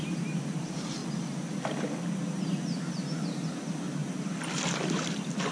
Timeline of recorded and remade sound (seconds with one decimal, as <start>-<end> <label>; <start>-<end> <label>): 0.0-5.5 recorded